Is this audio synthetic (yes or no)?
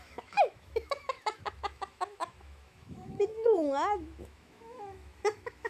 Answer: yes